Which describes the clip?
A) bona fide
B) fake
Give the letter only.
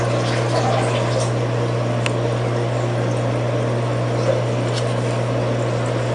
A